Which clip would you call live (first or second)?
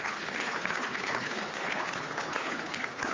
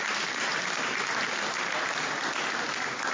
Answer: second